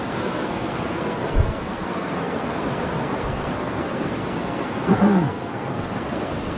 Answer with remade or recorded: remade